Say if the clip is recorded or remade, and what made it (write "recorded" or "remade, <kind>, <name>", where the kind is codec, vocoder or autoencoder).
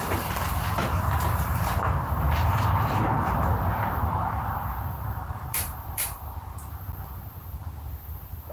remade, vocoder, BigVGAN v2